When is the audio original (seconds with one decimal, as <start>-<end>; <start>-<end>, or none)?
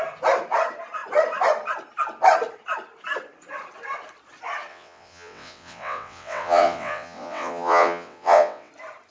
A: 0.0-4.7; 8.7-9.1